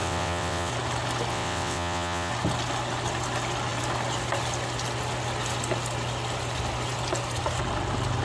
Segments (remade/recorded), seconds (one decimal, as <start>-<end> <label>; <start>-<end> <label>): 0.0-0.7 remade; 0.7-1.3 recorded; 1.3-2.3 remade; 2.3-8.2 recorded